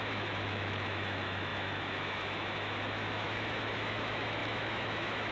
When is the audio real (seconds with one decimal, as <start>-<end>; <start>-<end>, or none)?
none